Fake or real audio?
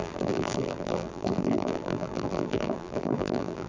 fake